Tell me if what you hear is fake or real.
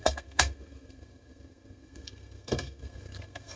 fake